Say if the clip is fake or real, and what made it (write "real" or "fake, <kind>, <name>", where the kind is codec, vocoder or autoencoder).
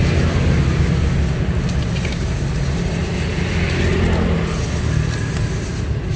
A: real